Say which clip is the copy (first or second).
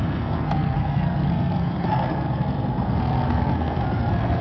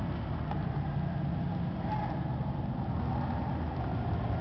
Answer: first